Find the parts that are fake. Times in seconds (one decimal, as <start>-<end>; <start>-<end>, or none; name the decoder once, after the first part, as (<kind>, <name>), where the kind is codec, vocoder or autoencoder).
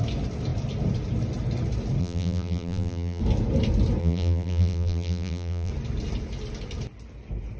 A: 2.0-3.2 (vocoder, BigVGAN v2); 4.0-5.7